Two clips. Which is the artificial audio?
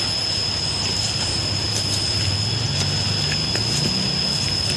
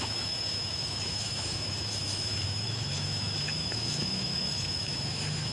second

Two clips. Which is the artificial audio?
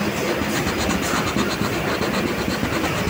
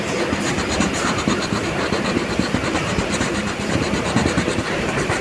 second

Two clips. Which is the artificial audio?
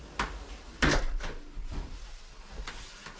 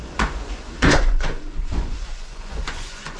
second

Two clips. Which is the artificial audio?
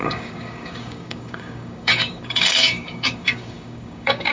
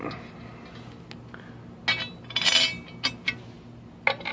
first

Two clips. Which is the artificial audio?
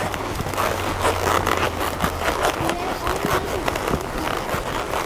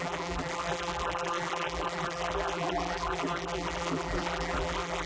second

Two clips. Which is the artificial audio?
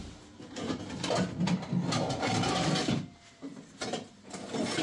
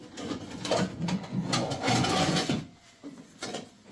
second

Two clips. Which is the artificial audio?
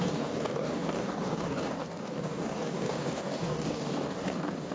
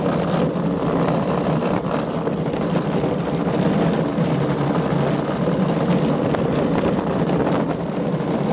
first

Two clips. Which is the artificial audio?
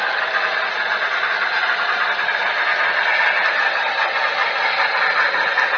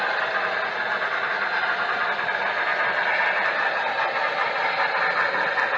first